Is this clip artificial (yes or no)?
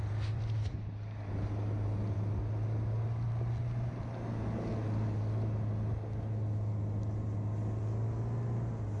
no